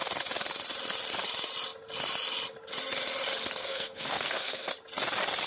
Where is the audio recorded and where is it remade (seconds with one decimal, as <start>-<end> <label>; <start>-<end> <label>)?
0.0-3.6 recorded; 3.6-4.7 remade; 4.7-5.5 recorded